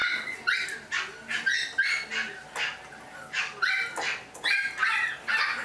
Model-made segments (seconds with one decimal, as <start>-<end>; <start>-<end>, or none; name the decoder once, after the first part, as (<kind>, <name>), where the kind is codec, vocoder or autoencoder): none